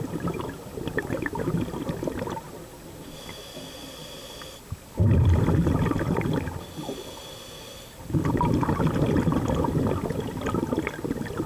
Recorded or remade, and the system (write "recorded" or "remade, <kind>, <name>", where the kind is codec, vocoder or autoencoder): recorded